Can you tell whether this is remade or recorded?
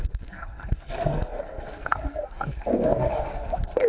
remade